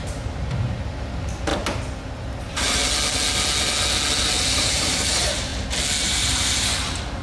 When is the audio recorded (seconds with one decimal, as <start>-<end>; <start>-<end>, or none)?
1.5-2.4; 2.8-4.2; 5.5-6.0